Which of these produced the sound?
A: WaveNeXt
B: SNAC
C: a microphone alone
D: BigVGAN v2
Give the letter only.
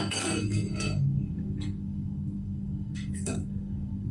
B